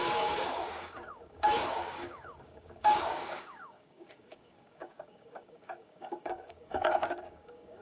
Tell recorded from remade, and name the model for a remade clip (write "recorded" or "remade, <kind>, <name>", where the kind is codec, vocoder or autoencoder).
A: remade, codec, DAC